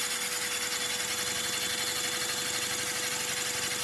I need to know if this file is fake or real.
real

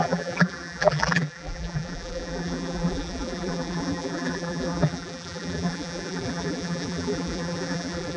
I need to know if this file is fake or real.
fake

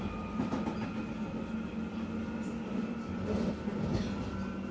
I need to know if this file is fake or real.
real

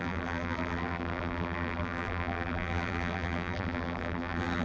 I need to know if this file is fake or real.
fake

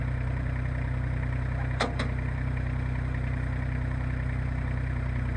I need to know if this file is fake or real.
fake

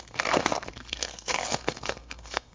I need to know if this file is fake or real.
fake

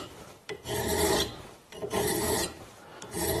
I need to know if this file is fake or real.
fake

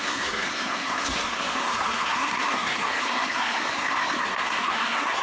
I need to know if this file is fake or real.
fake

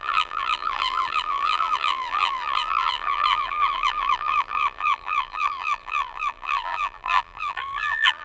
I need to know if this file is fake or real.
fake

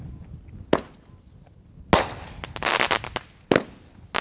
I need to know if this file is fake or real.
real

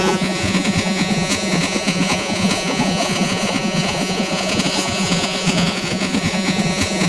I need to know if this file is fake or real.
fake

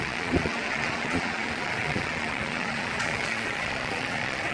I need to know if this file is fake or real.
fake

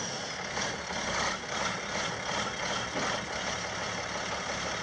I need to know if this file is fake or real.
real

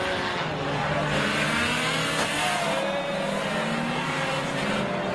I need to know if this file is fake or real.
real